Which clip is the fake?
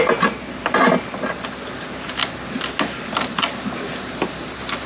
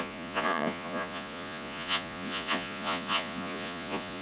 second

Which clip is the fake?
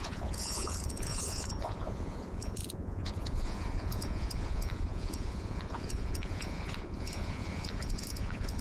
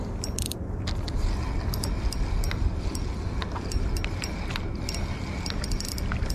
first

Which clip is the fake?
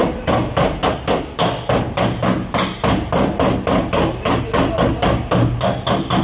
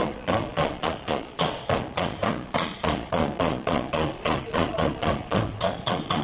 second